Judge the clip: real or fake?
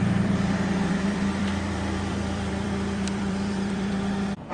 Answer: fake